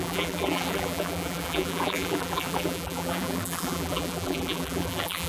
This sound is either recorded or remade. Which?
remade